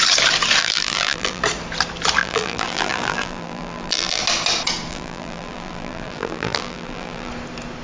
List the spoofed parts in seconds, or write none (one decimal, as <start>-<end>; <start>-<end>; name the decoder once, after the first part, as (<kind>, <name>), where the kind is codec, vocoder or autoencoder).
0.6-1.4 (vocoder, BigVGAN v2); 2.2-4.2; 4.9-7.3